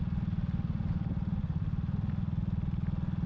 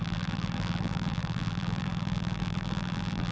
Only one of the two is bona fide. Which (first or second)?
first